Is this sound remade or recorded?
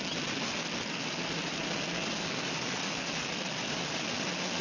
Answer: recorded